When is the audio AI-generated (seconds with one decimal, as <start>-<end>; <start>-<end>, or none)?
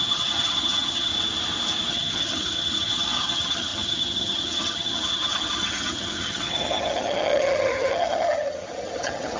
0.0-1.1; 1.9-9.4